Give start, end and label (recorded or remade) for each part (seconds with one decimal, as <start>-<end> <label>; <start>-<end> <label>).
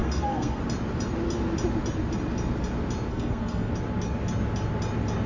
0.0-0.6 remade; 0.6-3.1 recorded; 3.1-3.7 remade; 3.7-5.3 recorded